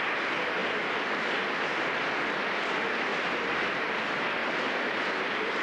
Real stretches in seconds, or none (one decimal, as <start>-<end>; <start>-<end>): 0.0-0.6; 1.1-3.1; 3.6-5.6